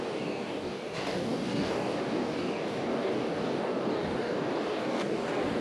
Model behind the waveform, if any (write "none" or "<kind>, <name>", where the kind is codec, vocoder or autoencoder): codec, DAC